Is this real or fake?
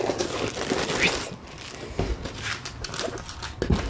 real